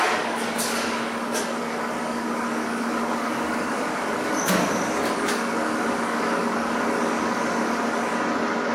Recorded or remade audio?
remade